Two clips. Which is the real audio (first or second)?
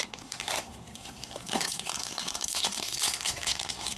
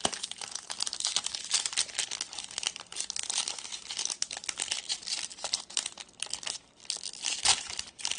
second